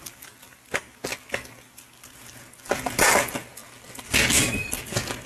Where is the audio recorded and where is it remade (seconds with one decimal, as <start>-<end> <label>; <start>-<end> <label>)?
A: 0.0-5.3 recorded